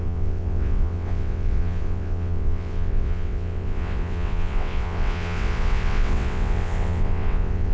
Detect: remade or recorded remade